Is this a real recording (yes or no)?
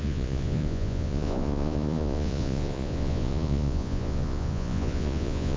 no